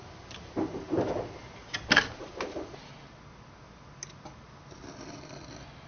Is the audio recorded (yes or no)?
yes